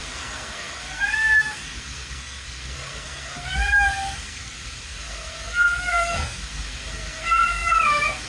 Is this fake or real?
fake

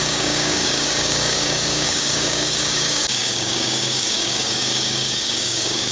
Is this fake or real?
fake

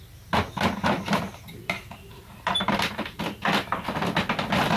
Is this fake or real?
real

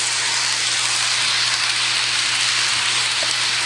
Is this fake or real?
real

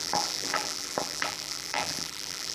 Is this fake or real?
fake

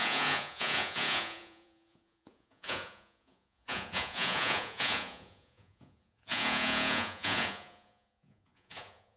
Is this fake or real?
fake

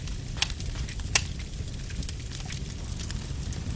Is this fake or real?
real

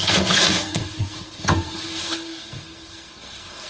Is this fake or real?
fake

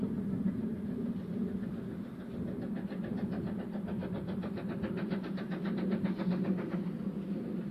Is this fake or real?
real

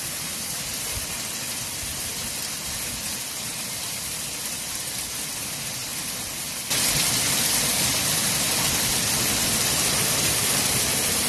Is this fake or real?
fake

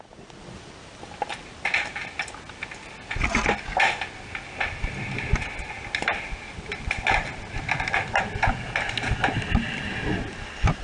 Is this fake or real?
real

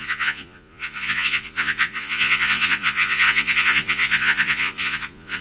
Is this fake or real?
fake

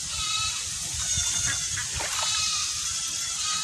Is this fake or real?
real